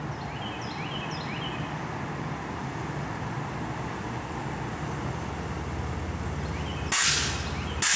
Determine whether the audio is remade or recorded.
recorded